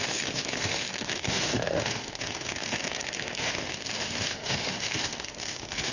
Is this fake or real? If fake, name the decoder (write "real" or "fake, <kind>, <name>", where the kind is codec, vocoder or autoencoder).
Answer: fake, autoencoder, DAC-VAE